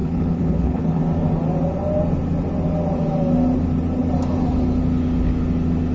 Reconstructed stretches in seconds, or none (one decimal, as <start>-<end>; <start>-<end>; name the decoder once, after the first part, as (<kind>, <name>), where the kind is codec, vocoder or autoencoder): 0.0-1.0 (codec, HILCodec)